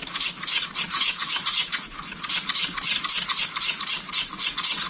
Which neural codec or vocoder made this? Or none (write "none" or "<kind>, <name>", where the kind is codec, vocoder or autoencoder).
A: vocoder, BigVGAN v2